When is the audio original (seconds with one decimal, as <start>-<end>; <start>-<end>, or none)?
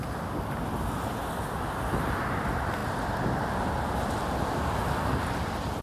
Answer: 0.0-5.8